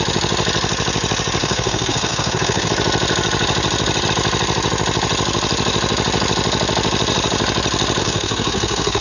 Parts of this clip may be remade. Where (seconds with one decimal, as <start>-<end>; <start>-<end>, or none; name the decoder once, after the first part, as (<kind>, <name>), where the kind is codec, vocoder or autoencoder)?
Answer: 1.4-2.7 (codec, SNAC); 8.0-9.0